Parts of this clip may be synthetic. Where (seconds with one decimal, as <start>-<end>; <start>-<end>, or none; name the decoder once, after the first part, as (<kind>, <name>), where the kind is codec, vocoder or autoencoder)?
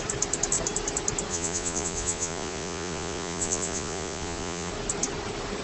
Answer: 1.3-4.7 (vocoder, Vocos)